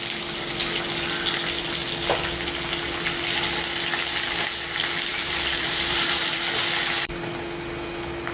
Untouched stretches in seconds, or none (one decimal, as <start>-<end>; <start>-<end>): 0.0-5.1; 6.4-8.3